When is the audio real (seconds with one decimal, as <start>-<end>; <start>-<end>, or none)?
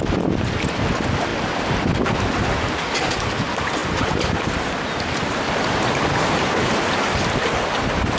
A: 0.0-1.3; 1.8-8.2